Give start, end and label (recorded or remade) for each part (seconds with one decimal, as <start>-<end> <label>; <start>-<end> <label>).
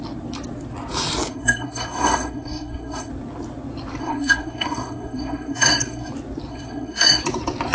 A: 0.0-1.3 recorded; 1.3-3.1 remade; 3.1-4.0 recorded; 4.0-6.1 remade; 6.1-6.5 recorded; 6.5-7.2 remade; 7.2-7.7 recorded